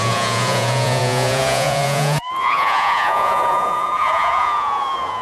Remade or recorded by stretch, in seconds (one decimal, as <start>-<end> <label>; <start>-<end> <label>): 0.0-5.2 remade

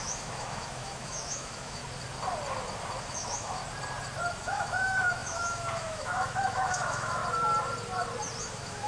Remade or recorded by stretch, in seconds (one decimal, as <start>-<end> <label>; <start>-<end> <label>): 0.0-1.8 remade; 1.8-3.0 recorded; 3.0-3.6 remade; 3.6-4.3 recorded; 4.3-7.2 remade; 7.2-8.4 recorded; 8.4-8.9 remade

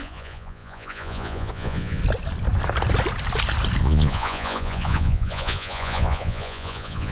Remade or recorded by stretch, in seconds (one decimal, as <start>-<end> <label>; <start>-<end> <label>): 0.0-2.0 remade; 2.0-3.8 recorded; 3.8-7.1 remade

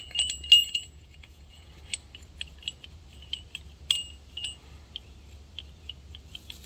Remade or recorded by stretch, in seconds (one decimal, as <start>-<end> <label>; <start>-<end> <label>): 0.0-0.6 recorded; 0.6-1.7 remade; 1.7-6.7 recorded

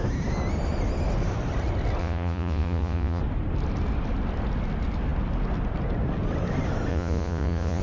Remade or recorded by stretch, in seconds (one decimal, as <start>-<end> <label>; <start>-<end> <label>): 0.0-2.0 recorded; 2.0-3.2 remade; 3.2-6.9 recorded; 6.9-7.8 remade